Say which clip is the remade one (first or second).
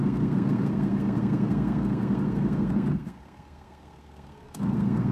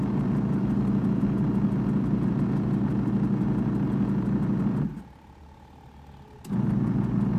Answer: first